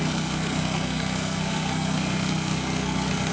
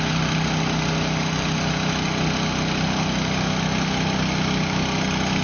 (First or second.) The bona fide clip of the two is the second